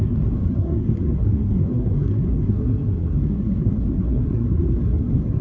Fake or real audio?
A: fake